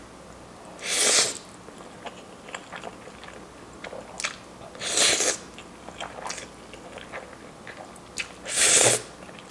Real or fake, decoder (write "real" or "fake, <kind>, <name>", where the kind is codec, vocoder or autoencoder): real